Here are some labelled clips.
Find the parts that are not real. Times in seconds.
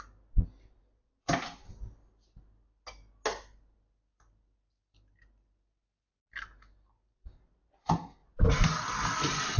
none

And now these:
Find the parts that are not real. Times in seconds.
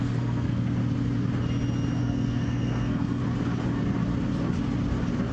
0.0-0.8 (codec, SNAC); 2.0-3.2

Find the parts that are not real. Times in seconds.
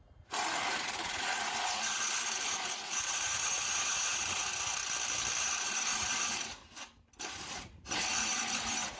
0.0-4.8 (vocoder, Vocos); 5.4-6.6; 7.3-9.0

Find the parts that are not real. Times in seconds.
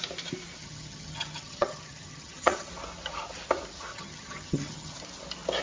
0.6-2.7 (vocoder, HiFi-GAN); 3.9-5.0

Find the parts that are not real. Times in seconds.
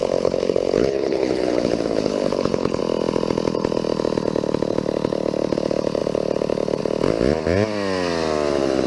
0.0-2.8 (codec, HILCodec)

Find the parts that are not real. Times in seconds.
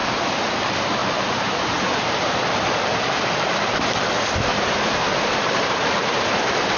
1.0-2.1 (vocoder, BigVGAN v2); 4.5-6.3